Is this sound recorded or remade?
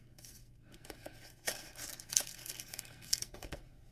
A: remade